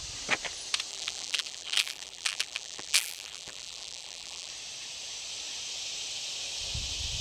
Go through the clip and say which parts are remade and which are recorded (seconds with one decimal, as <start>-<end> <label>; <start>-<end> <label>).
0.0-0.9 recorded; 0.9-4.5 remade; 4.5-7.2 recorded